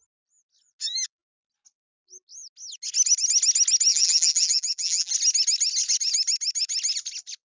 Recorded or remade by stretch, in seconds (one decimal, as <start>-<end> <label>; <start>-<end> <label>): 0.0-3.9 recorded; 3.9-5.1 remade; 5.1-7.4 recorded